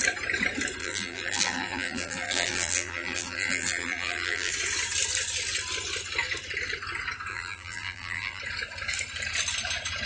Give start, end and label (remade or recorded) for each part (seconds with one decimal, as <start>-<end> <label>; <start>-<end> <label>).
0.0-0.8 recorded; 0.8-4.5 remade; 4.5-7.3 recorded; 7.3-8.4 remade; 8.4-10.1 recorded